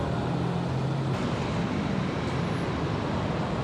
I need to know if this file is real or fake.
real